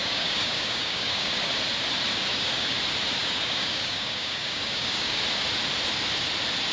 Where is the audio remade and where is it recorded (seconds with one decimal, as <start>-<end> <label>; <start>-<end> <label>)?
0.0-1.5 remade; 1.5-2.3 recorded; 2.3-2.8 remade; 2.8-3.2 recorded; 3.2-5.2 remade; 5.2-6.7 recorded